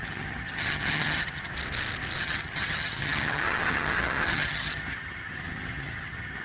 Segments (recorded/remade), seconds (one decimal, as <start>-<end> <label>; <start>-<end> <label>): 0.0-1.5 remade; 1.5-2.2 recorded; 2.2-6.4 remade